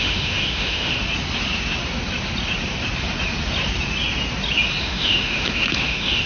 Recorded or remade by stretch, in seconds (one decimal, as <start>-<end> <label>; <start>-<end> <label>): 0.0-1.0 remade; 1.0-4.8 recorded; 4.8-6.3 remade